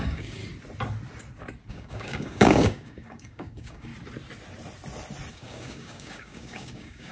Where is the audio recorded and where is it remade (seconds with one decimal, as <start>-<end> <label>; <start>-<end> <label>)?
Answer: 0.0-0.4 remade; 0.4-1.7 recorded; 1.7-3.9 remade; 3.9-5.3 recorded; 5.3-7.1 remade